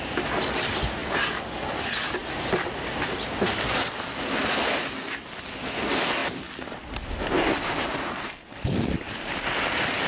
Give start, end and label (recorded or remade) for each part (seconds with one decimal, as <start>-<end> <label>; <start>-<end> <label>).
0.0-10.1 recorded